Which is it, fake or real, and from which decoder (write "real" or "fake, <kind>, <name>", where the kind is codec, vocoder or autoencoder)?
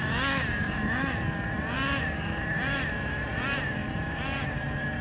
real